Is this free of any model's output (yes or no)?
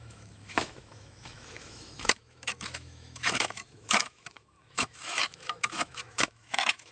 no